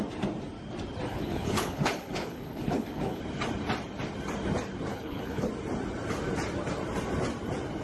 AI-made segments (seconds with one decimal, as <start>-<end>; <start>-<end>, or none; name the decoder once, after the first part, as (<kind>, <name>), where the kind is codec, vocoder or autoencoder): 1.1-3.2 (codec, HILCodec); 4.9-5.5